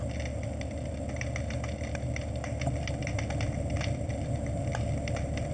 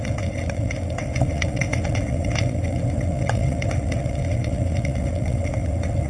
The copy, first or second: second